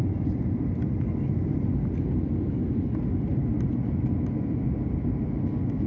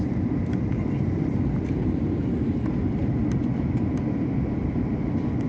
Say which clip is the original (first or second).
first